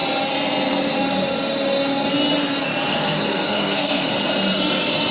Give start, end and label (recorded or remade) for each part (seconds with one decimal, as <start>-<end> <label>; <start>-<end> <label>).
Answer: 0.0-2.9 recorded; 2.9-4.1 remade; 4.1-5.1 recorded